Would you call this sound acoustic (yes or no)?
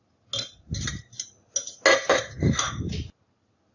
yes